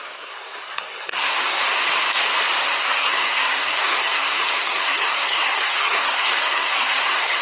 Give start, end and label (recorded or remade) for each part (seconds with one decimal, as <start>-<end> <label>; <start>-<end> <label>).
0.0-1.6 remade; 1.6-2.6 recorded; 2.6-7.4 remade